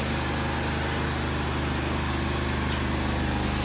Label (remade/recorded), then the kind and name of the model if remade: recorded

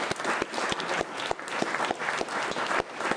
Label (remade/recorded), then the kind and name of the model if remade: recorded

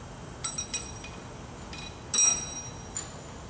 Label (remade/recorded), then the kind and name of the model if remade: recorded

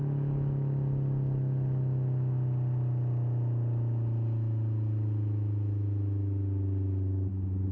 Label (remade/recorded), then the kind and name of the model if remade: recorded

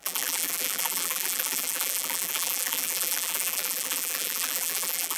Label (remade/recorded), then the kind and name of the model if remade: remade, vocoder, BigVGAN v2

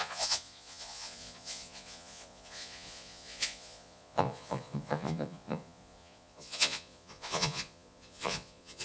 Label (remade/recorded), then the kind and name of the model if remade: remade, vocoder, Vocos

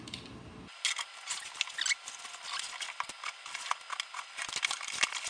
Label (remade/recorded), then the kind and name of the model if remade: recorded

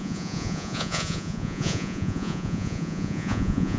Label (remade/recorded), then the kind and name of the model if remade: remade, vocoder, Vocos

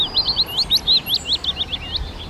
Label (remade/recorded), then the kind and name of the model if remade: recorded